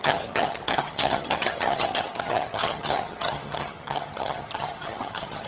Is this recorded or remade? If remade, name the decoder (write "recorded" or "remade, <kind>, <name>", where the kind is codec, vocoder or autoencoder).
remade, vocoder, HiFi-GAN